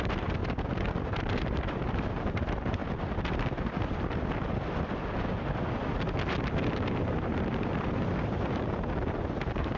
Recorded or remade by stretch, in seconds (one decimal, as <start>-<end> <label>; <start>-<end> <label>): 0.0-0.4 remade; 0.4-1.0 recorded; 1.0-2.8 remade; 2.8-6.9 recorded; 6.9-9.8 remade

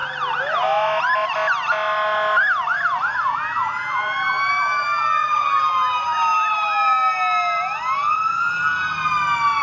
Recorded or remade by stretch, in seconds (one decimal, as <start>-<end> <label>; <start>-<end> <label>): 0.0-9.6 recorded

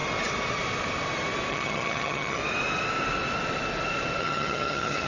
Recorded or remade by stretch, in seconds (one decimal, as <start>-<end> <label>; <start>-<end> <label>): 0.0-1.5 recorded; 1.5-2.4 remade; 2.4-4.2 recorded; 4.2-5.1 remade

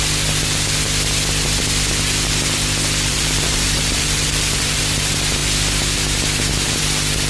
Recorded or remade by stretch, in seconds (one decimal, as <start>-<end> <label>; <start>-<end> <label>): 0.0-3.1 recorded; 3.1-4.8 remade; 4.8-7.3 recorded

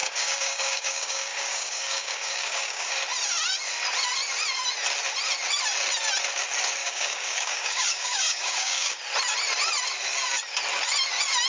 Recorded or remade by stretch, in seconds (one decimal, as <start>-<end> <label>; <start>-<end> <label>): 0.0-2.9 remade; 2.9-6.8 recorded; 6.8-9.0 remade; 9.0-11.5 recorded

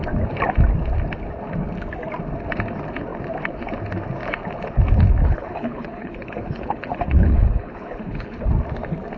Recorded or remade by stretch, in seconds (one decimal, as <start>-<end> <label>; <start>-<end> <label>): 0.0-5.2 recorded; 5.2-8.5 remade; 8.5-9.2 recorded

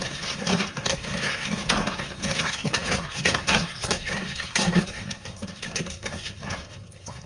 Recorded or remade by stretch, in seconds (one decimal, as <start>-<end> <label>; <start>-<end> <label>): 0.0-7.3 remade

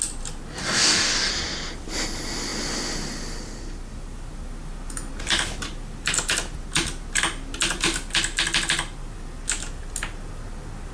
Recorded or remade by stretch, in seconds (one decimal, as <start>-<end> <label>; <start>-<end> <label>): 0.0-0.6 recorded; 0.6-1.3 remade; 1.3-10.9 recorded